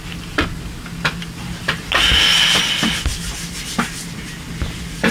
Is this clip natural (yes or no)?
yes